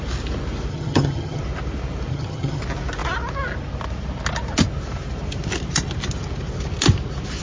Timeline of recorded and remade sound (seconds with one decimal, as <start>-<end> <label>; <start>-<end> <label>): 0.0-0.7 recorded; 0.7-1.4 remade; 1.4-2.1 recorded; 2.1-2.6 remade; 2.6-7.4 recorded